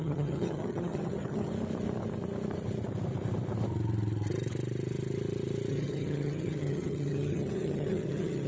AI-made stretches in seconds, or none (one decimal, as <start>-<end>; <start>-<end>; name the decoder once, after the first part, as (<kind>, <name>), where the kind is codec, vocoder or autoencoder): 0.0-1.5 (vocoder, HiFi-GAN); 5.7-8.5